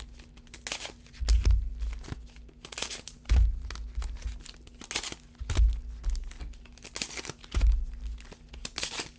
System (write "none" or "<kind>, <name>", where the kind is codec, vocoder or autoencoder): none